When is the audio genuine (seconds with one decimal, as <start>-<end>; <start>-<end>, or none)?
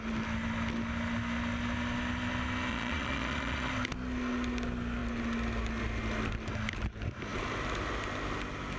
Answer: 0.0-2.7; 3.7-8.8